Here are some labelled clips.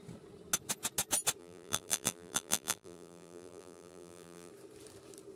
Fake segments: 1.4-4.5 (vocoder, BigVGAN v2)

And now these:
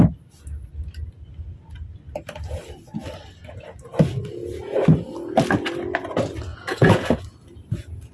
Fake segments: 6.5-7.1 (vocoder, Vocos)